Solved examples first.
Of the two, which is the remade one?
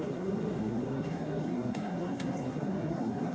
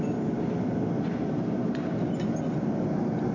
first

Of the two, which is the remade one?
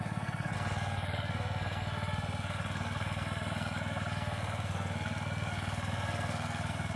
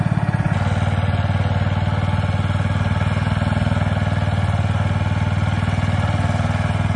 first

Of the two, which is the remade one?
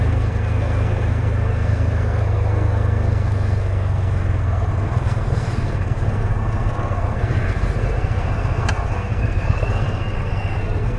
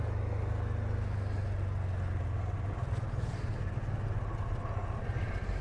first